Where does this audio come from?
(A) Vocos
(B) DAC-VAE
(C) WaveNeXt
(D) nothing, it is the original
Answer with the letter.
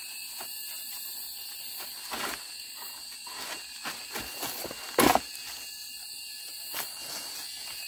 D